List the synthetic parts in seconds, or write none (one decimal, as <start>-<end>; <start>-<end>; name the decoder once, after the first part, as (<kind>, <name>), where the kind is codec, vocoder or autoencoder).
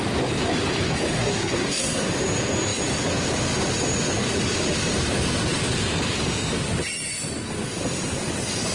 1.1-2.1 (codec, SNAC)